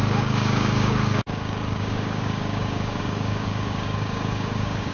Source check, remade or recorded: remade